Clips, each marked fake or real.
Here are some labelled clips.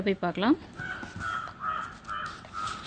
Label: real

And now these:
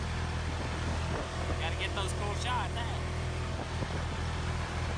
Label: real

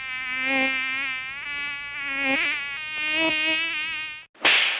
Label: real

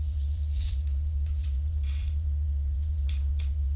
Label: fake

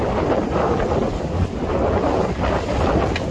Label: real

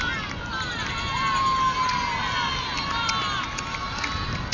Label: real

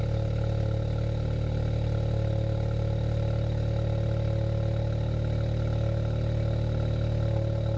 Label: real